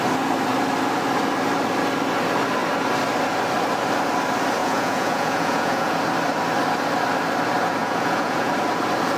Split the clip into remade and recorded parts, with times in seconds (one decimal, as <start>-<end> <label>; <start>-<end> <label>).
0.0-4.6 recorded; 4.6-6.0 remade; 6.0-7.8 recorded; 7.8-8.5 remade; 8.5-9.2 recorded